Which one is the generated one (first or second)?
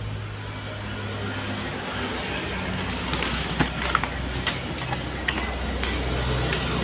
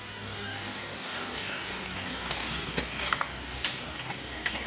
second